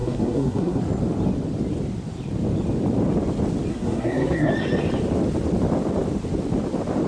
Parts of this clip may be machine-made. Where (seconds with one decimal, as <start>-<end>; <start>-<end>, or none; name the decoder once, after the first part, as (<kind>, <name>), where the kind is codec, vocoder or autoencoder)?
0.0-0.8 (codec, SNAC); 3.7-4.5